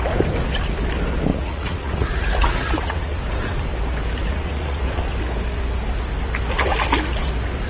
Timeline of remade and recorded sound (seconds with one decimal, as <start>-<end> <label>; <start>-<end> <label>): 0.0-1.3 recorded; 1.3-3.2 remade; 3.2-4.3 recorded; 4.3-5.0 remade; 5.0-7.7 recorded